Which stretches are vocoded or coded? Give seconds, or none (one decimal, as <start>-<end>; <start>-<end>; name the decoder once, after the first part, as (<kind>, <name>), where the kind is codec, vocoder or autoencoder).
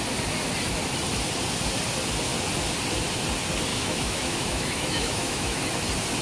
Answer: 3.7-5.6 (autoencoder, DAC-VAE)